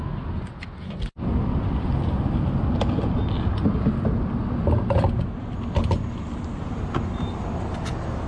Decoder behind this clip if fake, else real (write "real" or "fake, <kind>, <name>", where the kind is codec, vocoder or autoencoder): real